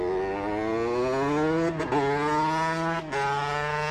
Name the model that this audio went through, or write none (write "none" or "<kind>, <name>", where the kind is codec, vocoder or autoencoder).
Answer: none